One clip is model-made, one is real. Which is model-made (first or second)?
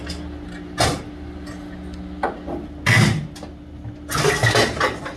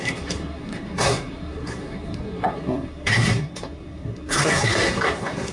second